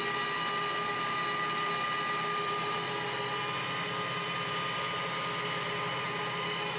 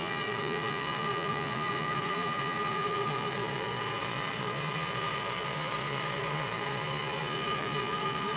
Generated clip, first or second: second